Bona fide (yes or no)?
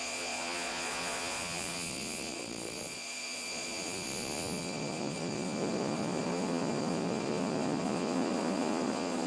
no